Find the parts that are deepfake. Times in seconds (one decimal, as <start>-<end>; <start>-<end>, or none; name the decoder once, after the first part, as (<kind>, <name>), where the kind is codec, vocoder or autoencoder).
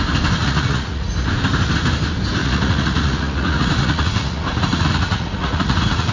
0.4-1.1 (vocoder, Vocos); 2.4-6.1